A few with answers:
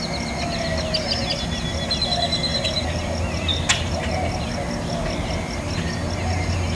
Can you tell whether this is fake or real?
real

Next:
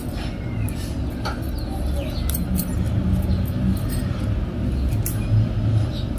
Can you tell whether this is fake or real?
real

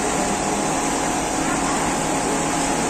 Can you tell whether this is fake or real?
real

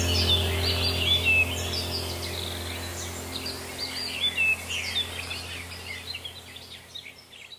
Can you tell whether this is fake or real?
real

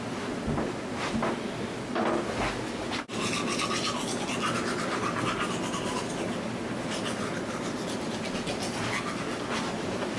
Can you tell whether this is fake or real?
real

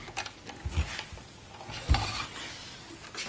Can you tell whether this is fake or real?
real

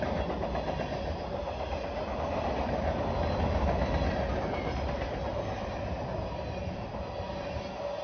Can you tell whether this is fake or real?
real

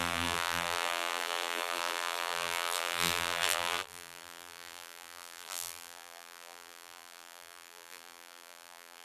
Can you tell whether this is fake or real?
fake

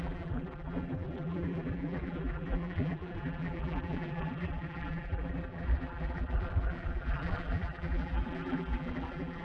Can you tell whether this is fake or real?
fake